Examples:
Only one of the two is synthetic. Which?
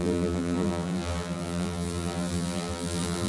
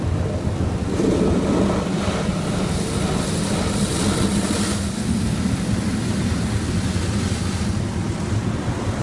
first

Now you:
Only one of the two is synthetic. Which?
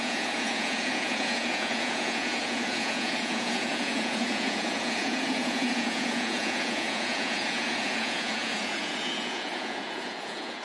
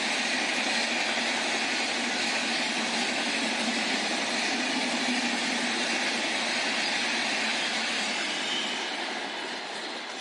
first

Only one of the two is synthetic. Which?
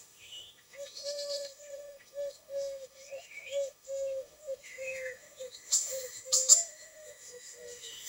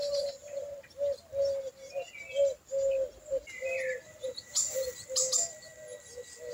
first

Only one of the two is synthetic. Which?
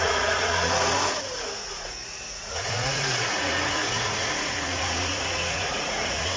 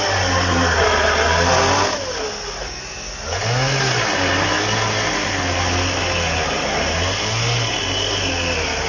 first